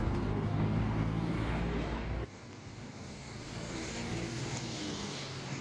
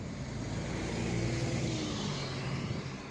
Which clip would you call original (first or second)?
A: second